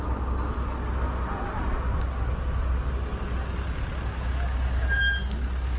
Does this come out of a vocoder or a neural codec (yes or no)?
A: no